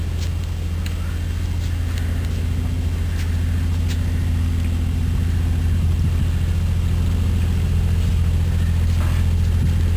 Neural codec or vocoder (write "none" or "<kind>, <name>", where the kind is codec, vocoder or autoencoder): none